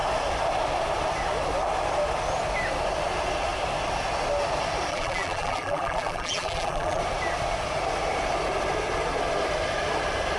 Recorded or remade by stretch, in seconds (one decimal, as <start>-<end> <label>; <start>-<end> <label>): 0.0-4.9 recorded; 4.9-7.0 remade; 7.0-10.4 recorded